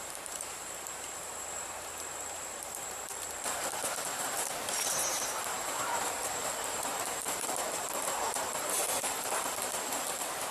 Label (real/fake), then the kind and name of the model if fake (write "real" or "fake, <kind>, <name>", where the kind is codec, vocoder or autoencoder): fake, vocoder, BigVGAN v2